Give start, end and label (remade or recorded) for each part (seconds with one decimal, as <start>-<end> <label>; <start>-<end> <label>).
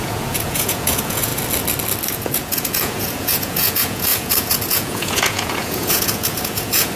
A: 0.0-1.3 remade; 1.3-2.1 recorded; 2.1-7.0 remade